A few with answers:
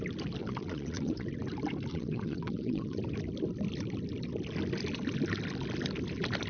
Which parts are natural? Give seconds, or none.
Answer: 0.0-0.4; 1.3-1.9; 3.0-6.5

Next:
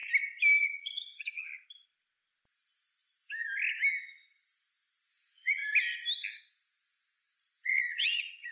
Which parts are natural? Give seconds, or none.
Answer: 0.0-0.6; 1.5-5.0; 5.6-6.8

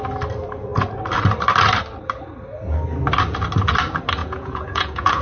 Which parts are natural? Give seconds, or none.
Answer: 0.0-4.2

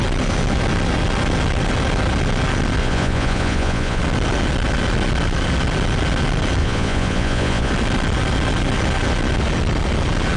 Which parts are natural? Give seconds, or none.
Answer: 0.0-2.8; 4.0-6.6; 7.7-10.4